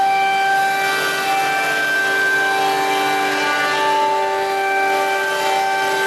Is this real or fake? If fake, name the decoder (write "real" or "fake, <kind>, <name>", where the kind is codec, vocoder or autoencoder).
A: real